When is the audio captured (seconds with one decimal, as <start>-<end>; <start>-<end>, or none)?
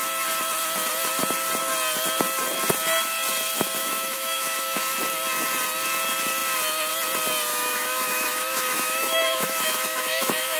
0.0-3.8; 4.8-7.5